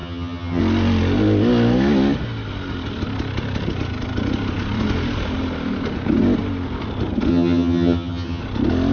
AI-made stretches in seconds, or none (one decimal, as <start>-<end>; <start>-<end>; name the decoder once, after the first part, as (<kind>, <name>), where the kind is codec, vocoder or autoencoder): 0.0-0.6 (vocoder, HiFi-GAN); 7.3-8.4